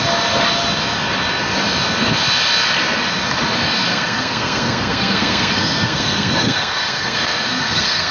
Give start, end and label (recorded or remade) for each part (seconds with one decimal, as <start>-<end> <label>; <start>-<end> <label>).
0.0-3.9 recorded; 3.9-8.1 remade